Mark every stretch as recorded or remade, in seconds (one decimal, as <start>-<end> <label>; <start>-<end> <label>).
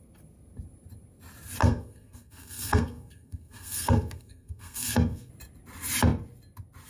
0.0-1.6 recorded; 1.6-5.3 remade; 5.3-6.9 recorded